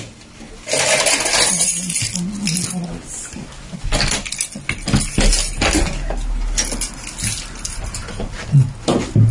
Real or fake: real